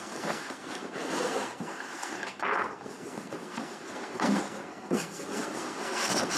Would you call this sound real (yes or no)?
no